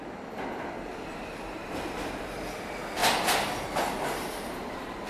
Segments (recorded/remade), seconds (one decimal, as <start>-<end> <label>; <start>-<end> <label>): 0.0-0.9 recorded; 0.9-1.9 remade; 1.9-5.1 recorded